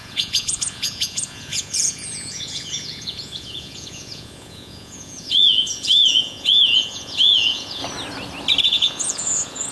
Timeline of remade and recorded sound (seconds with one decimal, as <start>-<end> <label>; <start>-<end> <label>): 0.0-7.8 remade; 7.8-8.6 recorded; 8.6-9.7 remade